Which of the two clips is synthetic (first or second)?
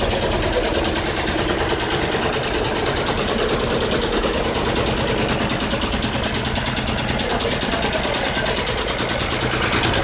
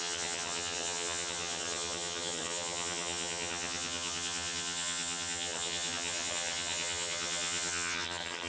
second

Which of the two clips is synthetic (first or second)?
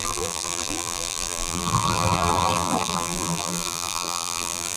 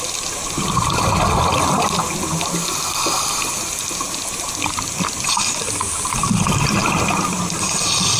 first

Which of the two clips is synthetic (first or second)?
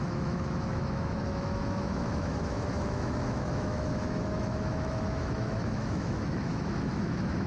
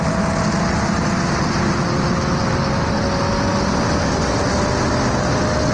first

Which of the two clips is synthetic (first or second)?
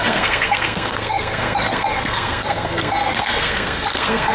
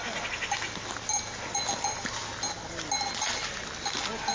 first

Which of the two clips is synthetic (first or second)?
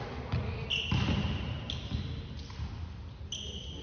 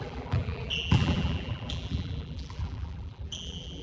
second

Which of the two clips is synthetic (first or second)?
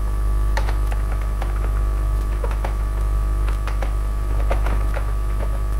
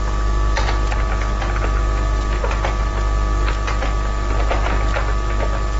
first